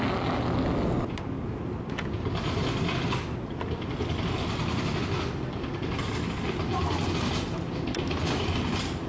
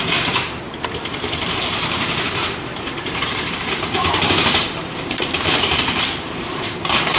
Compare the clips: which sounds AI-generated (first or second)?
second